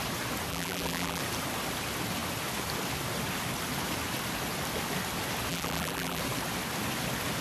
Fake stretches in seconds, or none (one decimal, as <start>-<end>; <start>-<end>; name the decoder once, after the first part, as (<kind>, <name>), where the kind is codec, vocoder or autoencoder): 0.5-1.2 (vocoder, BigVGAN v2); 5.5-6.2